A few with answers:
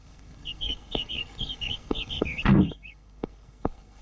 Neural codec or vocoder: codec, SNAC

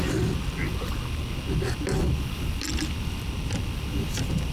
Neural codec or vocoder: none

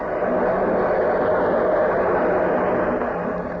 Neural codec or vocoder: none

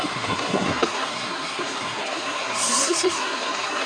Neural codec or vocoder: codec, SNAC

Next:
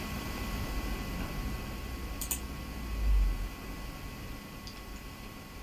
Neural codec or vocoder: none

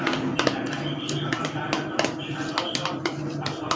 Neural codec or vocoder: none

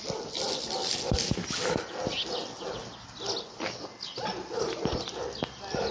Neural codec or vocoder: none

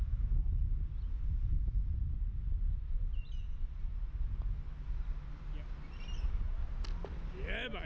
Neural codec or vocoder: none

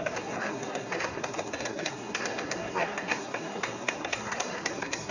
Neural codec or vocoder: codec, SNAC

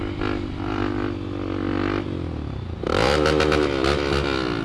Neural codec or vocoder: none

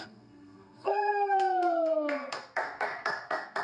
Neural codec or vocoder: codec, SNAC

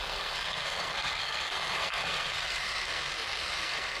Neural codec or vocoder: codec, SNAC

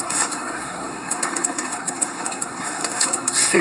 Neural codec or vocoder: codec, SNAC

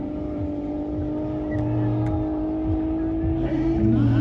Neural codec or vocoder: none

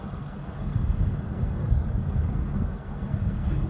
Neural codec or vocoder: codec, SNAC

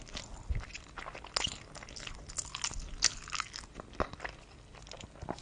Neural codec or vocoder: none